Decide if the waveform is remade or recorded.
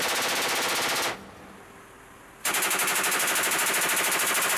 recorded